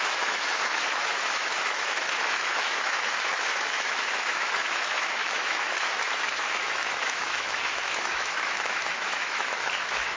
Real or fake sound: fake